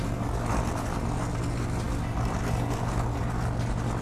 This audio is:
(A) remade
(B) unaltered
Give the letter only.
B